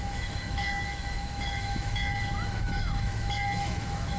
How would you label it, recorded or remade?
remade